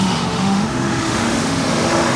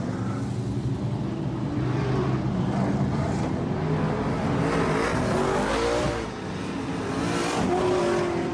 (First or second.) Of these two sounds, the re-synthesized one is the first